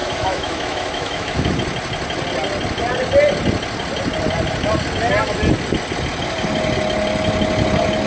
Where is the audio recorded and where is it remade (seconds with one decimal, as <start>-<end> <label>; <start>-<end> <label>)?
0.0-1.5 remade; 1.5-8.1 recorded